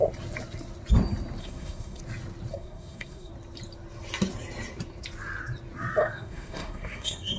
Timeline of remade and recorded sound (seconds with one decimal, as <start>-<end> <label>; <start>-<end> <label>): 0.0-1.4 recorded; 1.4-2.0 remade; 2.0-2.5 recorded; 2.5-3.3 remade; 3.3-6.0 recorded; 6.0-7.4 remade